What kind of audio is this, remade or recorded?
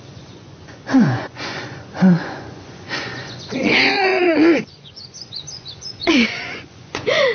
remade